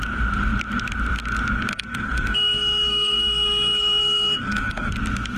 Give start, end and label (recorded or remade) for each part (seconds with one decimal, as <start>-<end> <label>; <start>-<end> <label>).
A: 0.0-1.7 recorded; 1.7-4.9 remade; 4.9-5.4 recorded